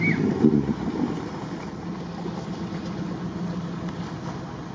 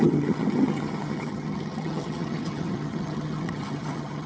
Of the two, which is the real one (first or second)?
first